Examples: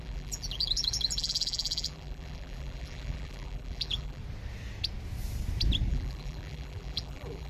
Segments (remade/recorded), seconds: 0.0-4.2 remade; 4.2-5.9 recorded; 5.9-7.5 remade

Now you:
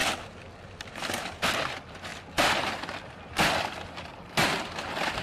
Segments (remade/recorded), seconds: 0.0-5.2 recorded

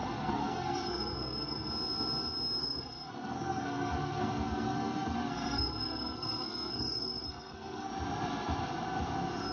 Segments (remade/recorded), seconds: 0.0-1.7 remade; 1.7-2.6 recorded; 2.6-7.9 remade; 7.9-9.5 recorded